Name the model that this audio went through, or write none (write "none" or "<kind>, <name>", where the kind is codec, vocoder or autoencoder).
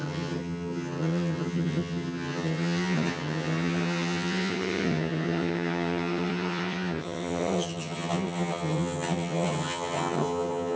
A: vocoder, HiFi-GAN